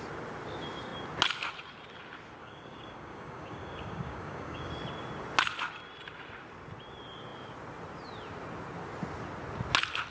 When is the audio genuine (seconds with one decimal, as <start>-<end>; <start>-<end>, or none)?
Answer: 0.0-2.4; 4.7-10.1